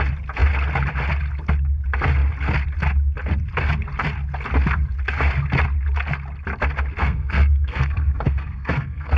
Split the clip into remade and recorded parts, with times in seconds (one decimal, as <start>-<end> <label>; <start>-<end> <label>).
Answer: 0.0-7.0 recorded; 7.0-9.2 remade